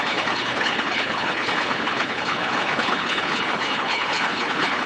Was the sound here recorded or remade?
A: remade